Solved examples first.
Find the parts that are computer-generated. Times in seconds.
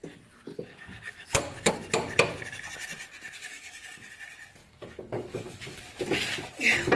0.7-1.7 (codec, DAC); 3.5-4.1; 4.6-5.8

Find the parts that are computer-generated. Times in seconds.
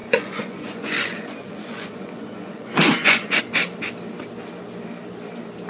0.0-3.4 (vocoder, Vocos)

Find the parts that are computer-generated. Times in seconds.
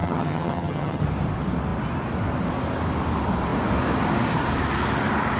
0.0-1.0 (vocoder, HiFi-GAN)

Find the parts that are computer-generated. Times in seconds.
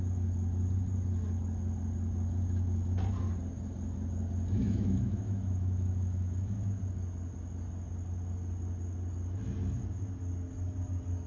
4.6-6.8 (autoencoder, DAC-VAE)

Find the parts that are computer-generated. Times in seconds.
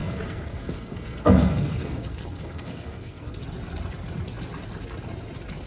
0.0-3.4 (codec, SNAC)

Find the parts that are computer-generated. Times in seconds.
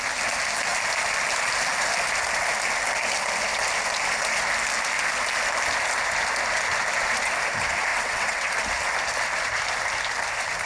7.9-8.5 (vocoder, WaveNeXt)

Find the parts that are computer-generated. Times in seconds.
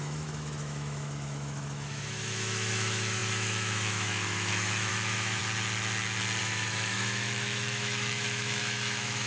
0.0-5.4 (autoencoder, DAC-VAE); 6.4-9.3